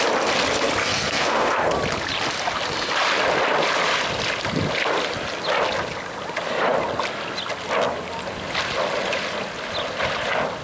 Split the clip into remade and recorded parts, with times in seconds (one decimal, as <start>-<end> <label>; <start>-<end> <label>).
0.0-0.8 recorded; 0.8-1.7 remade; 1.7-10.6 recorded